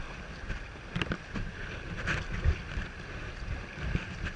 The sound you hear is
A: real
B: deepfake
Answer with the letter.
A